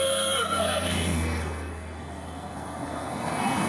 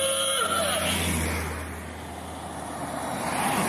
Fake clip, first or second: first